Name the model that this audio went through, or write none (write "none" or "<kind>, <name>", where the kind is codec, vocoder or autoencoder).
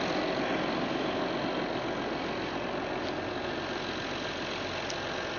none